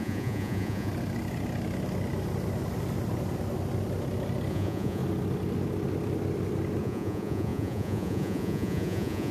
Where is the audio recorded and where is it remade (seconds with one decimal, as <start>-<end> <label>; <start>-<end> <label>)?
0.0-0.9 remade; 0.9-4.5 recorded; 4.5-5.0 remade; 5.0-6.8 recorded; 6.8-9.3 remade